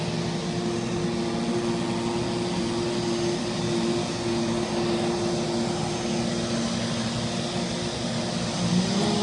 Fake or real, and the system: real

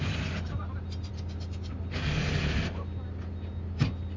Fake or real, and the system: real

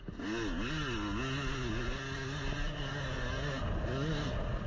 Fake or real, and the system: real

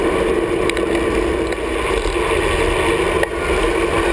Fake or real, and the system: real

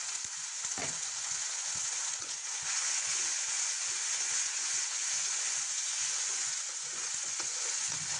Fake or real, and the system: fake, vocoder, Vocos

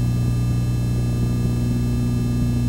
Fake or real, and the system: real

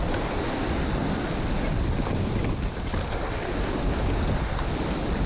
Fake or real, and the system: real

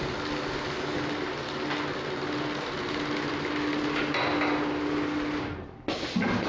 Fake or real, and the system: real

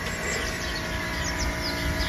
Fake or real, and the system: real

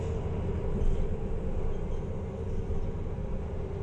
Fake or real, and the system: real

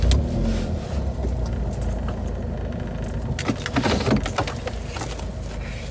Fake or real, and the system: real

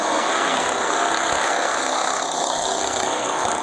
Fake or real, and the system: fake, codec, SNAC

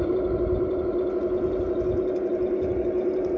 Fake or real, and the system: real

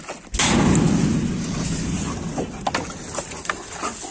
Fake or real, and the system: real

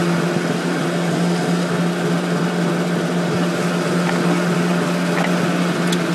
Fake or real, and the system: real